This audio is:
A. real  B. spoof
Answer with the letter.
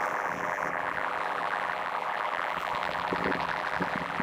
B